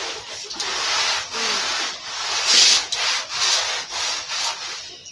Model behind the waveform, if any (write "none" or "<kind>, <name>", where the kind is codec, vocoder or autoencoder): none